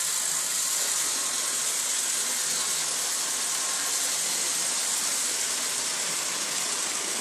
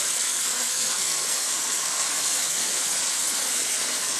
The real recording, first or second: first